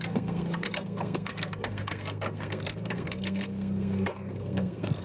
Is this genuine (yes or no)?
no